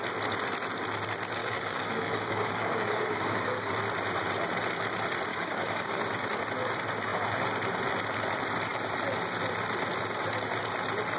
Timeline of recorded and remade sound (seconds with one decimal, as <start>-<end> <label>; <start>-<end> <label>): 0.0-1.4 recorded; 1.4-3.7 remade; 3.7-5.3 recorded; 5.3-6.0 remade; 6.0-11.2 recorded